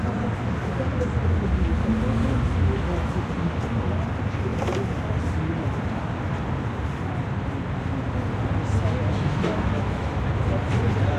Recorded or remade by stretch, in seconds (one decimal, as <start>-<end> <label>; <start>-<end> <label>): 0.0-9.0 recorded; 9.0-10.1 remade; 10.1-11.2 recorded